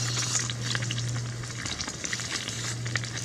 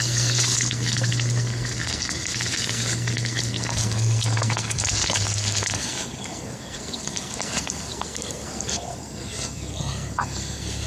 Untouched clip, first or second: first